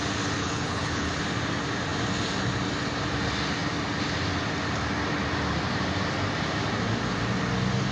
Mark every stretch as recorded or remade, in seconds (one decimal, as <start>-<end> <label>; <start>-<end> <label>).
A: 0.0-0.4 recorded; 0.4-1.2 remade; 1.2-7.9 recorded